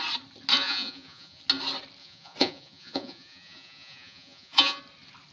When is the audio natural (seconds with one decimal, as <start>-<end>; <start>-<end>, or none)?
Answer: 0.0-0.5; 1.4-2.0; 4.8-5.3